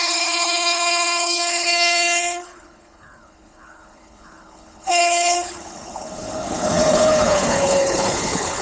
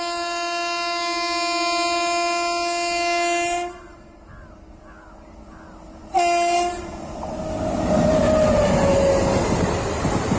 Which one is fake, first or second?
first